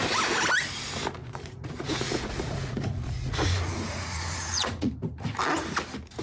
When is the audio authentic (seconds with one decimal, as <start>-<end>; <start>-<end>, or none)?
0.0-1.2; 4.9-6.2